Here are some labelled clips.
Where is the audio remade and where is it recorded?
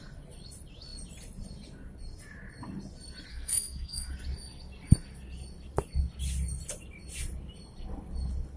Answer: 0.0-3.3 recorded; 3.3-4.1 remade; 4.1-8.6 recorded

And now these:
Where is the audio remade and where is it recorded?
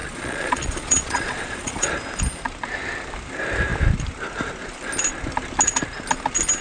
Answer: 0.0-1.9 remade; 1.9-6.6 recorded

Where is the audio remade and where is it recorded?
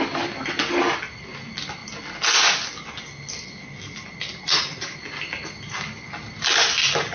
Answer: 0.0-7.1 recorded